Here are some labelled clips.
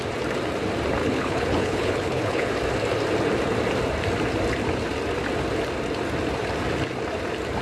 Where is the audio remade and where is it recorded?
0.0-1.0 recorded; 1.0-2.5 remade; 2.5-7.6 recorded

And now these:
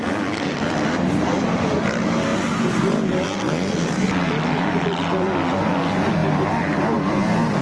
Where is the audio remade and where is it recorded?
0.0-7.6 recorded